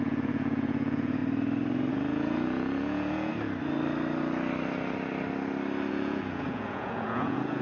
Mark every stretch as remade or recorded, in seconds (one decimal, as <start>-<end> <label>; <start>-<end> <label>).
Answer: 0.0-1.2 remade; 1.2-1.9 recorded; 1.9-3.3 remade; 3.3-5.9 recorded; 5.9-7.6 remade

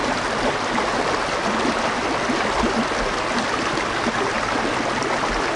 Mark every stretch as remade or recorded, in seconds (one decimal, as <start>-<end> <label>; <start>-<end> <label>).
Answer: 0.0-5.6 recorded

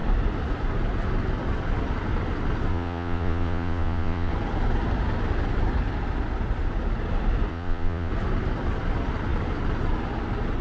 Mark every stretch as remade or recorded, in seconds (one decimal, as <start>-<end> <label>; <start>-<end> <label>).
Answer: 0.0-2.7 recorded; 2.7-4.3 remade; 4.3-7.5 recorded; 7.5-8.1 remade; 8.1-10.6 recorded